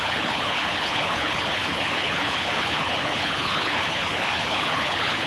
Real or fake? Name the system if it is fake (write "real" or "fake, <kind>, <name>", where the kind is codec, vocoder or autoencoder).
fake, codec, HILCodec